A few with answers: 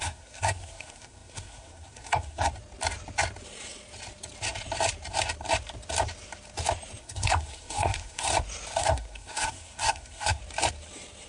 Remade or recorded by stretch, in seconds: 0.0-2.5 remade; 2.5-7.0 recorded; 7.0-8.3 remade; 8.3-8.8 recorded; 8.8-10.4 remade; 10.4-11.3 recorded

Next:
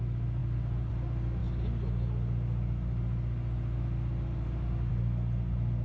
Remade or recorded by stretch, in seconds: 0.0-5.8 recorded

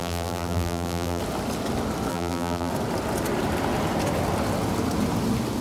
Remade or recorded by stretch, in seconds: 0.0-1.2 remade; 1.2-2.1 recorded; 2.1-2.7 remade; 2.7-5.6 recorded